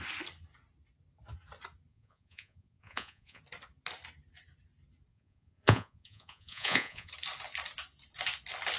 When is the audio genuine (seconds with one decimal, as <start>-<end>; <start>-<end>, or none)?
0.0-1.9; 3.4-5.1; 7.1-8.8